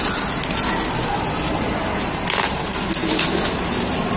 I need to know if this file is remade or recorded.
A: recorded